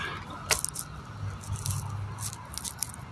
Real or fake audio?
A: real